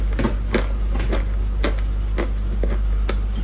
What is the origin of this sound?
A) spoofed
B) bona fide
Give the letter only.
B